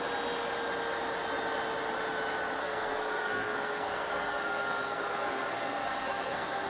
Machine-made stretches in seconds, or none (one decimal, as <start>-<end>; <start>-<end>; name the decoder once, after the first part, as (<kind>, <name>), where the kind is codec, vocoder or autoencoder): 2.6-6.7 (codec, SNAC)